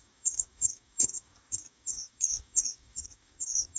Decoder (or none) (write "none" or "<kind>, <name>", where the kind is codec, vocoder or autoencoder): codec, DAC